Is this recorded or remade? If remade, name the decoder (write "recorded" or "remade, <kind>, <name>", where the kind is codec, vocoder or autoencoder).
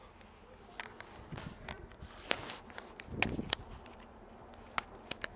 recorded